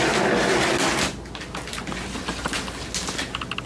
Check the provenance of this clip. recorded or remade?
recorded